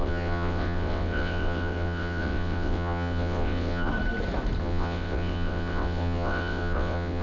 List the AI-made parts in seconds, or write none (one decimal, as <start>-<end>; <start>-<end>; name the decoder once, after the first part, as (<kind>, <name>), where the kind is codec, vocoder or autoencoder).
0.0-3.9 (vocoder, WaveNeXt); 4.6-7.2